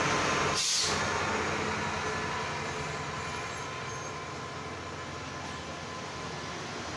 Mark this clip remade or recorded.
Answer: recorded